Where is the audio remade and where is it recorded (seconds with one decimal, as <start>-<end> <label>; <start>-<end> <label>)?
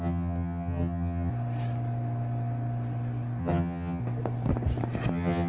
0.0-1.3 remade; 1.3-3.4 recorded; 3.4-4.0 remade; 4.0-5.1 recorded; 5.1-5.5 remade